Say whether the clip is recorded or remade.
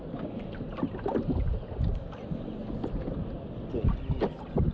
recorded